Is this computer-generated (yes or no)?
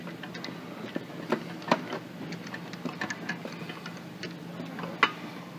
no